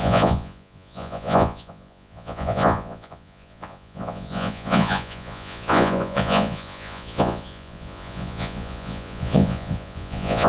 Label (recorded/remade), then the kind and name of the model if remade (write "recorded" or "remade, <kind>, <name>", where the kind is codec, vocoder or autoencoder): remade, vocoder, Vocos